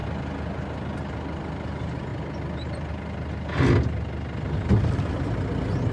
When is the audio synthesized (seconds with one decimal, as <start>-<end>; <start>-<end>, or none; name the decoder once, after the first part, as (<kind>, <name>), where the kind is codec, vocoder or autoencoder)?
none